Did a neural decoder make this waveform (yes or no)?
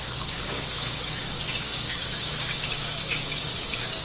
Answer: yes